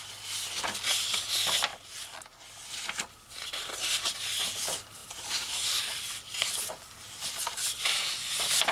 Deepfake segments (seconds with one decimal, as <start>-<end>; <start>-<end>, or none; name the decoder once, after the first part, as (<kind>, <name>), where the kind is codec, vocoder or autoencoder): none